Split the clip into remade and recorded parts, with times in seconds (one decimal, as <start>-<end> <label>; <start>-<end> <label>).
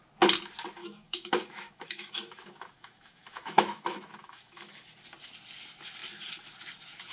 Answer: 0.0-0.8 recorded; 0.8-4.7 remade; 4.7-7.1 recorded